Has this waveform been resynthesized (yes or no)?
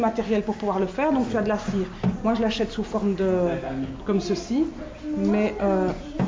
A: no